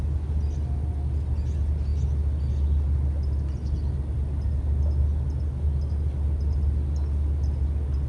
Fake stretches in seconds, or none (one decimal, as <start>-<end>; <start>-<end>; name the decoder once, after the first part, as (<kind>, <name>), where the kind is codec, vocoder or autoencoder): none